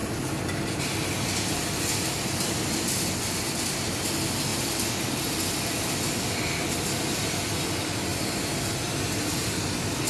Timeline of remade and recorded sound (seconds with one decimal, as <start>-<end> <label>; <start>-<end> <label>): 0.0-10.1 recorded